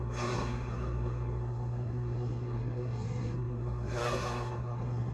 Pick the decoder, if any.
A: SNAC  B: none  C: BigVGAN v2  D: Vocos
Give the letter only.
A